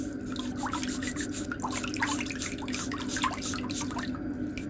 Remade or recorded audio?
recorded